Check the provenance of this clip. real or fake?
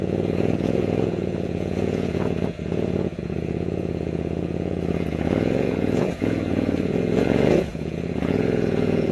fake